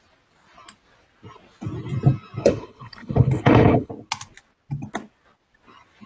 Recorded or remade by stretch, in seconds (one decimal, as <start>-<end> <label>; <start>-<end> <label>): 0.0-2.4 recorded; 2.4-3.9 remade; 3.9-6.1 recorded